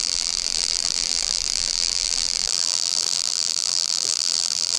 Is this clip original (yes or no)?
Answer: no